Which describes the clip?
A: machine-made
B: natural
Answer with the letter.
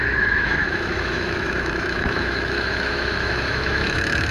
A